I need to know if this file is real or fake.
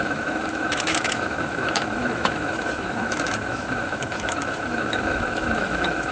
fake